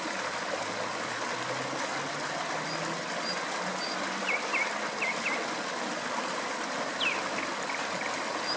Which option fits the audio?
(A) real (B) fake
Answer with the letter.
A